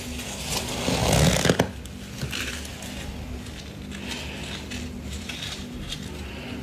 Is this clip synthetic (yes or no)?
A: no